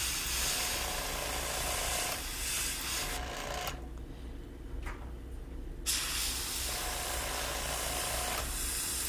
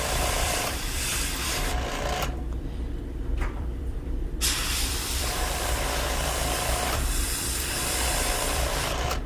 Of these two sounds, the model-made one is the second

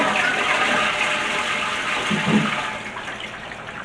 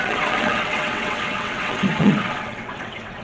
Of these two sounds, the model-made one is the second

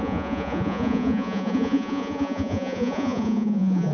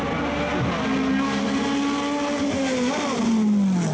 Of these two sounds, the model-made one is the first